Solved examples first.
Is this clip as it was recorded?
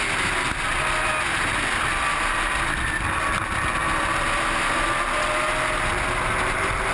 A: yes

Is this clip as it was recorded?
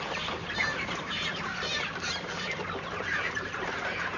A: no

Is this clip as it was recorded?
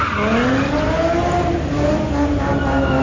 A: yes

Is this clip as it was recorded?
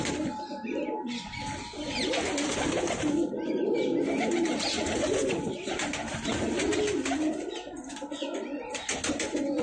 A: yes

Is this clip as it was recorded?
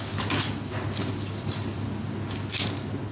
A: yes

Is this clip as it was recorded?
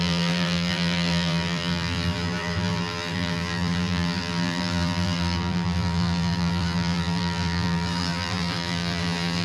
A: no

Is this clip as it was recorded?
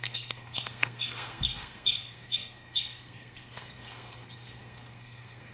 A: no